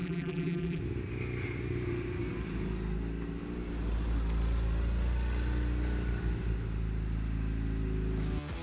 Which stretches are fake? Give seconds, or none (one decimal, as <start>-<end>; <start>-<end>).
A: 0.0-0.8